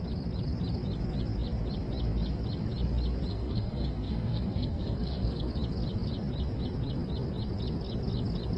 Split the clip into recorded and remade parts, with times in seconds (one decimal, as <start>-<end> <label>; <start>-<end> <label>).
0.0-3.3 recorded; 3.3-5.5 remade; 5.5-8.6 recorded

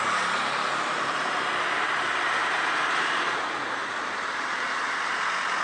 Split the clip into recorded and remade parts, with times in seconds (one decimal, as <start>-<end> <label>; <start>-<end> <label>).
0.0-2.4 recorded; 2.4-3.4 remade; 3.4-3.8 recorded; 3.8-5.1 remade; 5.1-5.6 recorded

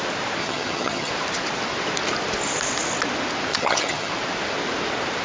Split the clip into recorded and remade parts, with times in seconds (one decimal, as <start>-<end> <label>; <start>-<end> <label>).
0.0-0.4 recorded; 0.4-1.1 remade; 1.1-3.5 recorded; 3.5-4.1 remade; 4.1-5.2 recorded

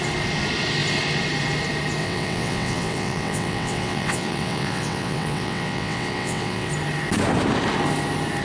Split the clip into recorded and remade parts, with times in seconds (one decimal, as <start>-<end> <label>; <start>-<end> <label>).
0.0-2.0 recorded; 2.0-6.7 remade; 6.7-8.4 recorded

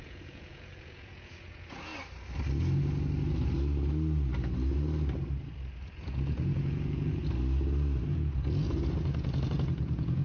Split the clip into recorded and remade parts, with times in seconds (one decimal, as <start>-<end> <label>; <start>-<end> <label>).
0.0-1.9 remade; 1.9-5.9 recorded; 5.9-7.2 remade; 7.2-8.1 recorded; 8.1-10.2 remade